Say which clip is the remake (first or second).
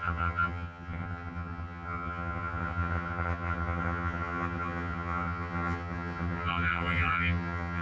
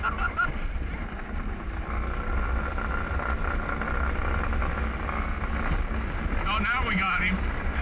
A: first